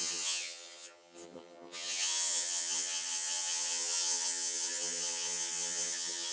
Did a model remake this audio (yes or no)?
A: yes